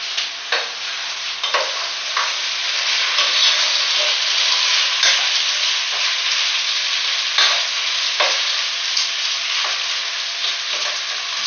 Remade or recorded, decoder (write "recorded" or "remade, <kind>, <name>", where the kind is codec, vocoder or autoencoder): recorded